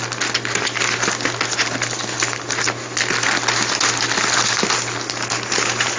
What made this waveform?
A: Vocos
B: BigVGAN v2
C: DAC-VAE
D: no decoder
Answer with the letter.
D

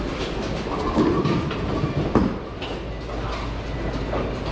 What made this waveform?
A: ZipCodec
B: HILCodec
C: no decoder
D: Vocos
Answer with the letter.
C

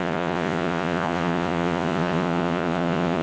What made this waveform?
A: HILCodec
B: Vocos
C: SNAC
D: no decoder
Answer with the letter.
B